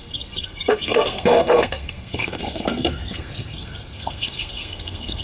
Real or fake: fake